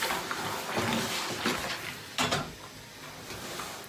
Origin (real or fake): real